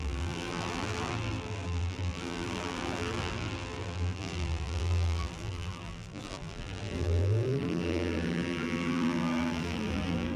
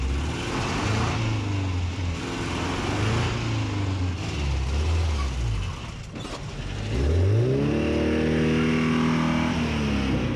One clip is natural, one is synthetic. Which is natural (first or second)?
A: second